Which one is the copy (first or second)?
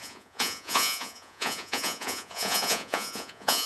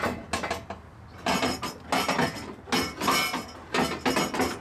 first